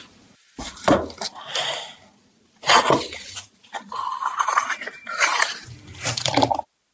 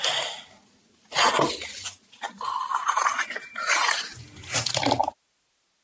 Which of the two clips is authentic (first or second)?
second